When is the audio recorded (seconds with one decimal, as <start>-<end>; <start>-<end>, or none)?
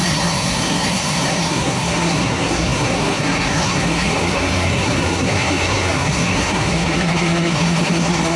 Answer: none